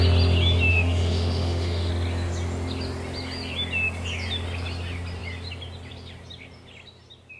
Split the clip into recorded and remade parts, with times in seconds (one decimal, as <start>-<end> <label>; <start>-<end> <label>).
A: 0.0-0.7 recorded; 0.7-1.9 remade; 1.9-7.4 recorded